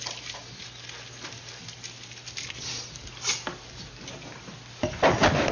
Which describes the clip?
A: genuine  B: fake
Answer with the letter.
A